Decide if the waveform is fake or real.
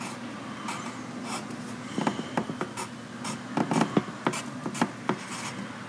real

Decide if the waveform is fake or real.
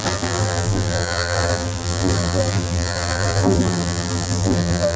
fake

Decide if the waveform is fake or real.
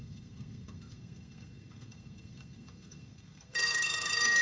fake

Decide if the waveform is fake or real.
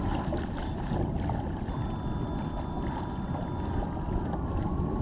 real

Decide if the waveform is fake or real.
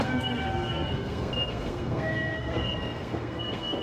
fake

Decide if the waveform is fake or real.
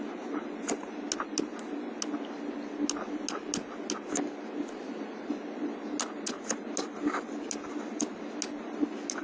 real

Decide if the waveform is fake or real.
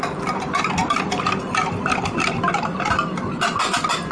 real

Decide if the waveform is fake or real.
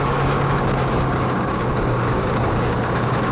fake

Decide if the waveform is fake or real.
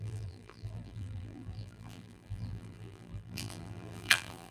fake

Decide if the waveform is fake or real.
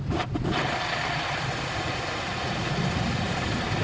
real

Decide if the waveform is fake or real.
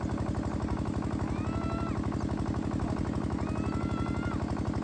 real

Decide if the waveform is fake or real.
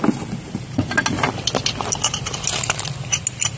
real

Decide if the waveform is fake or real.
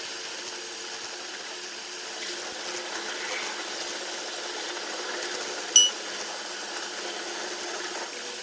real